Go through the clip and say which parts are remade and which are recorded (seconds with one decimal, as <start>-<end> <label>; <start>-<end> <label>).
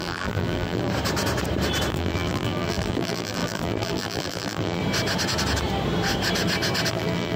0.0-0.9 remade; 0.9-1.9 recorded; 1.9-4.8 remade; 4.8-6.9 recorded; 6.9-7.4 remade